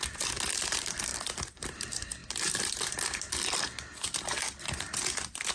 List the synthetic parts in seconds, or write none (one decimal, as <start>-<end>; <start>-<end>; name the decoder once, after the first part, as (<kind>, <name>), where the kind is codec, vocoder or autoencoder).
none